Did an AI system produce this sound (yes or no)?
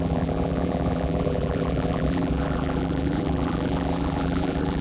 yes